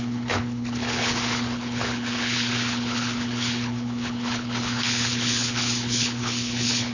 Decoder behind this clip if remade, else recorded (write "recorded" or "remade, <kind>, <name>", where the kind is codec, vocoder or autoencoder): remade, codec, HILCodec